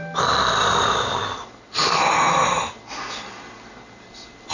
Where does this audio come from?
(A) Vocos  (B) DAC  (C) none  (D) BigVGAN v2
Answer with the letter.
C